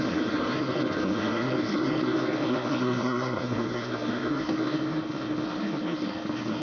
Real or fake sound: fake